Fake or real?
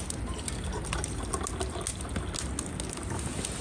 real